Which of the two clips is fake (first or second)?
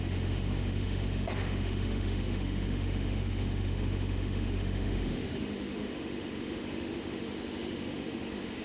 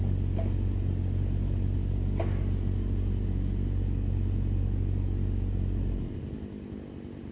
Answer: first